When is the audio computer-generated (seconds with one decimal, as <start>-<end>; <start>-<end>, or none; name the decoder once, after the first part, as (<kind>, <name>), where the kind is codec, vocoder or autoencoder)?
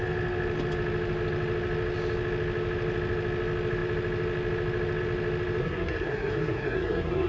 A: 5.6-7.3 (codec, SNAC)